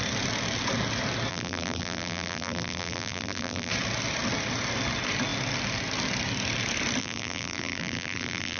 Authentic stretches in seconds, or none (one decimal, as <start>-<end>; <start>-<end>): 0.0-1.3; 3.7-7.0